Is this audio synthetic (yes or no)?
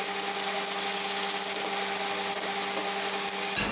no